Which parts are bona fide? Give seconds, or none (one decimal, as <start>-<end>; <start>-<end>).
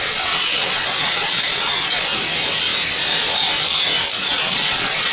2.1-4.2